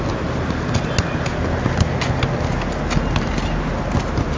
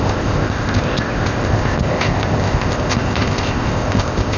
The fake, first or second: second